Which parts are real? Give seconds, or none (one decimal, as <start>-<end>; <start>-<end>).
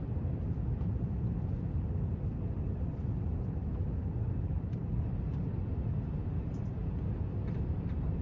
0.0-8.2